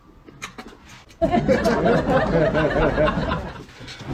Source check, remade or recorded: recorded